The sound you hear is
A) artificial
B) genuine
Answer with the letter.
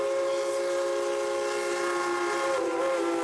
B